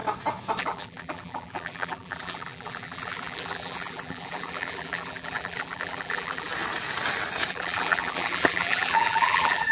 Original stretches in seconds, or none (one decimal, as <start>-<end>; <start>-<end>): 0.0-0.6; 6.5-7.5